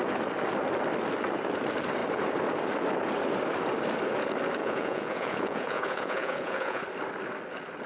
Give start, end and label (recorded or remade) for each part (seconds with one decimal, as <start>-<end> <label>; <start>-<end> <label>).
0.0-4.6 recorded; 4.6-6.8 remade; 6.8-7.9 recorded